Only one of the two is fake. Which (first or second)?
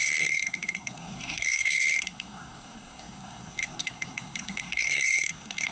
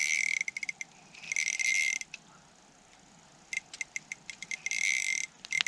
first